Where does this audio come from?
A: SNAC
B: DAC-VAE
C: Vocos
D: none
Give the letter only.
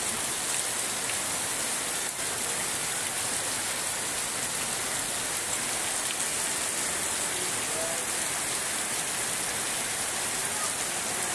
D